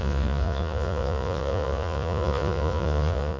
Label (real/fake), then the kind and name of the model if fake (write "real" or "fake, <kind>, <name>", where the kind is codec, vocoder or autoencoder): fake, vocoder, Vocos